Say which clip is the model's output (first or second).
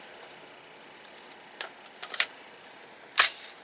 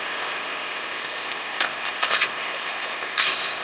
second